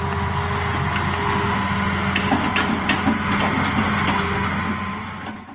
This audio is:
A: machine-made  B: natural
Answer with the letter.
B